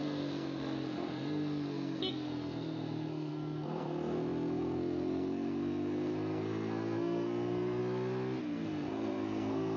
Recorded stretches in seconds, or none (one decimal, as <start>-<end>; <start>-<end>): 7.8-8.4